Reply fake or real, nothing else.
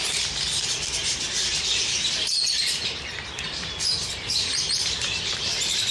fake